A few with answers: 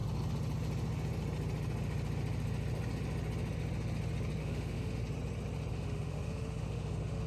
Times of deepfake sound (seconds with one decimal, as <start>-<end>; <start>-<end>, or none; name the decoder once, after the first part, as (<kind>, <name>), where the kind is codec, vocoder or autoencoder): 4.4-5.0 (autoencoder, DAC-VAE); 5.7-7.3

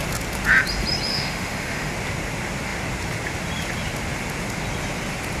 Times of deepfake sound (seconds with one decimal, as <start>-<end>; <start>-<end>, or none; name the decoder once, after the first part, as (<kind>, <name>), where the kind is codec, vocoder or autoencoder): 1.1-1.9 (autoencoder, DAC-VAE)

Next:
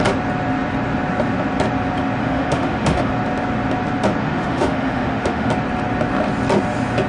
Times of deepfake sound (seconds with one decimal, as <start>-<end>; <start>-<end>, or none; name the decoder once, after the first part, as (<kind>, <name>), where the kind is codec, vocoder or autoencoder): 2.2-3.1 (autoencoder, DAC-VAE); 4.2-5.5

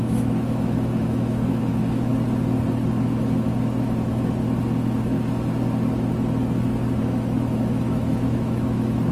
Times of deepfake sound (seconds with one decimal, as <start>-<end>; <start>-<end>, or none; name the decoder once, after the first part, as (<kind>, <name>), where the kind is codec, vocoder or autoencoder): 0.0-2.1 (autoencoder, DAC-VAE); 3.0-4.4; 7.0-9.1